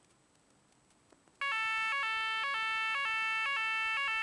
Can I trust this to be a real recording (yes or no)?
yes